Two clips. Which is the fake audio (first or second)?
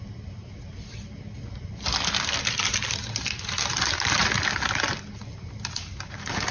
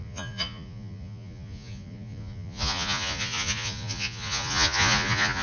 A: second